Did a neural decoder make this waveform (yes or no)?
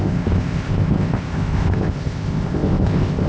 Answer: yes